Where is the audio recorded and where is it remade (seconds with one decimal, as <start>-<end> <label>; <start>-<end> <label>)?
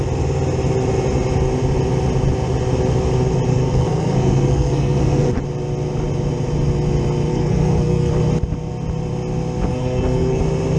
0.0-3.5 recorded; 3.5-5.3 remade; 5.3-7.3 recorded; 7.3-8.1 remade; 8.1-9.7 recorded; 9.7-10.4 remade; 10.4-10.8 recorded